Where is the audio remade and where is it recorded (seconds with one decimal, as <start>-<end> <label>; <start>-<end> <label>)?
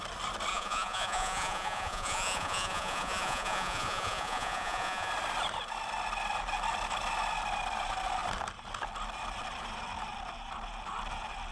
0.0-0.5 recorded; 0.5-5.1 remade; 5.1-11.5 recorded